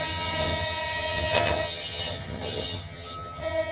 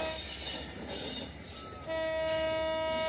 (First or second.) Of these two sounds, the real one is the second